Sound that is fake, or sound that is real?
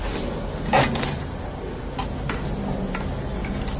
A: real